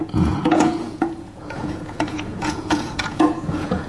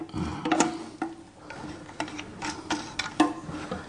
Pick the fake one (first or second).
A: first